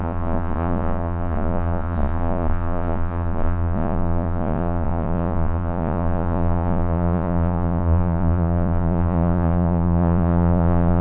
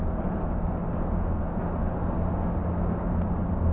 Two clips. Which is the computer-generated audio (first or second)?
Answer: first